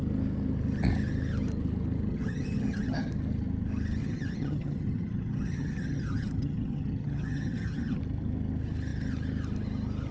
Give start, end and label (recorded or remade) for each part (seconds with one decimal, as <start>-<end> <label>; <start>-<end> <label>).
0.0-2.1 recorded; 2.1-3.1 remade; 3.1-4.0 recorded; 4.0-8.0 remade; 8.0-10.1 recorded

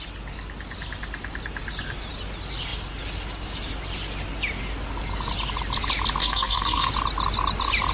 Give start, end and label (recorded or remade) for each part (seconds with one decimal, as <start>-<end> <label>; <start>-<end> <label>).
0.0-6.2 recorded; 6.2-6.9 remade; 6.9-7.9 recorded

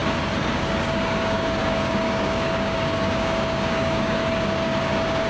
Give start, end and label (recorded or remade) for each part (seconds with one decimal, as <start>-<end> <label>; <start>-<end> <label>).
0.0-0.5 recorded; 0.5-5.3 remade

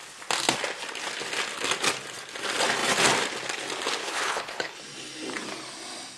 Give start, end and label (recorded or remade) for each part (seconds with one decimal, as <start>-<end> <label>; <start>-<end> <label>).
0.0-4.0 recorded; 4.0-4.8 remade; 4.8-6.2 recorded

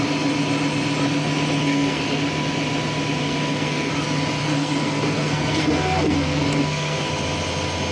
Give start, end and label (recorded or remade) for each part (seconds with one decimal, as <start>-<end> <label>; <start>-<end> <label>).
0.0-1.6 recorded; 1.6-2.2 remade; 2.2-3.2 recorded; 3.2-3.9 remade; 3.9-4.4 recorded; 4.4-7.1 remade; 7.1-7.9 recorded

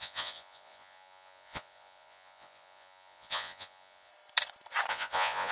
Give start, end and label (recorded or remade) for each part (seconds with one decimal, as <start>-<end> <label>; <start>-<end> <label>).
0.0-4.1 remade; 4.1-4.9 recorded; 4.9-5.5 remade

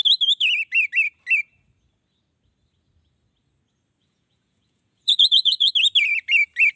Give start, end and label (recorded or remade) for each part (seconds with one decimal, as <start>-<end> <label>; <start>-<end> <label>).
0.0-4.0 recorded; 4.0-5.7 remade; 5.7-6.8 recorded

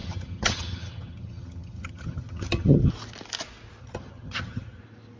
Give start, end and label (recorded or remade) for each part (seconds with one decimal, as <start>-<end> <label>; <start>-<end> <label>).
0.0-2.9 remade; 2.9-3.8 recorded; 3.8-4.8 remade; 4.8-5.2 recorded